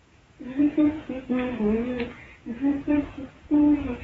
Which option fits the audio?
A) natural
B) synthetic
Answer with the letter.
B